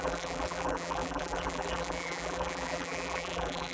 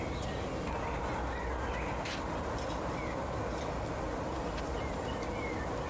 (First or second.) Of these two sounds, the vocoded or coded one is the first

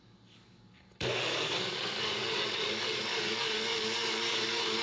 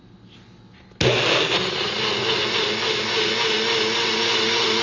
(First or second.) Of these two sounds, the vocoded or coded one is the first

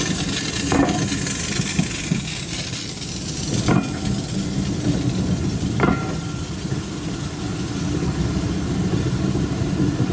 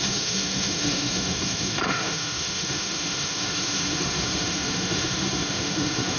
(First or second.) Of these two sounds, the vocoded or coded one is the second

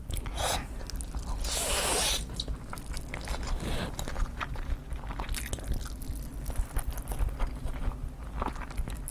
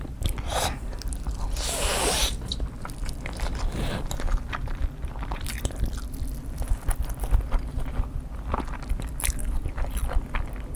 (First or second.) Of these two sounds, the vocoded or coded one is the second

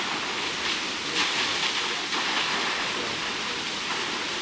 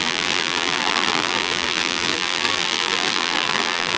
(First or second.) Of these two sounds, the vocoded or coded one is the second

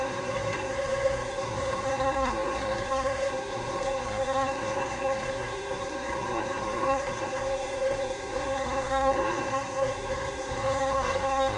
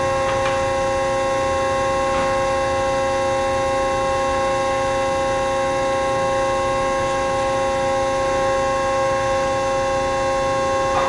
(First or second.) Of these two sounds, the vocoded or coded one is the first